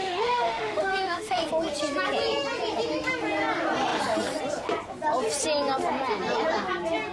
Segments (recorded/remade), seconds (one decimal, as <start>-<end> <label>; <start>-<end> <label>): 0.0-1.5 remade; 1.5-7.1 recorded

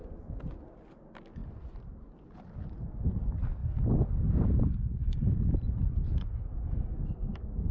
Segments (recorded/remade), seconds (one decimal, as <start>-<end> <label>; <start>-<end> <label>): 0.0-7.7 recorded